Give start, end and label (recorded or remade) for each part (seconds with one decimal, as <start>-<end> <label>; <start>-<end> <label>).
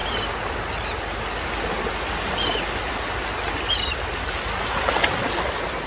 0.0-5.9 recorded